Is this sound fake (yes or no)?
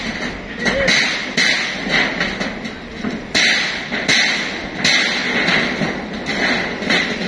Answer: no